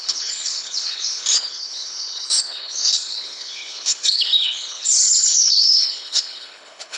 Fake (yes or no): yes